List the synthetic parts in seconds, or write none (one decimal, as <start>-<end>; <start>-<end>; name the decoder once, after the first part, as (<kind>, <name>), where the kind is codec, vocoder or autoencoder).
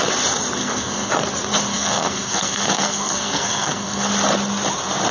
0.6-1.1 (codec, SNAC); 1.7-4.1